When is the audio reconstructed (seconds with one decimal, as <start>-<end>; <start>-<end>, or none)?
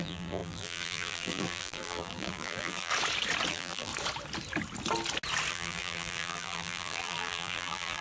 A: 0.0-2.9; 3.5-3.9; 5.5-8.0